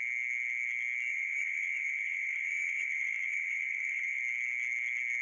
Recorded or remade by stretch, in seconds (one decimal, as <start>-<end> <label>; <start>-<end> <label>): 0.0-1.1 recorded; 1.1-4.2 remade; 4.2-5.2 recorded

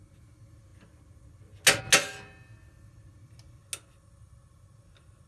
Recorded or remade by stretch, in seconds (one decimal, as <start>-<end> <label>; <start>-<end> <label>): 0.0-5.3 recorded